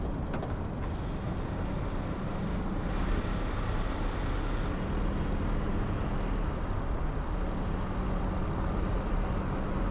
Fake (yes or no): no